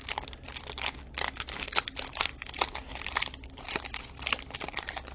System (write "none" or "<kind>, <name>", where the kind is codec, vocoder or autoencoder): none